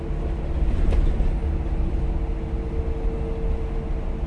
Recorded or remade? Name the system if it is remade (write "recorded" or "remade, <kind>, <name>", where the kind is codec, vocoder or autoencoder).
recorded